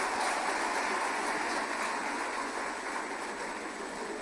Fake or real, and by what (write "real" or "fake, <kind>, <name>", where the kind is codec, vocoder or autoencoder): fake, vocoder, Vocos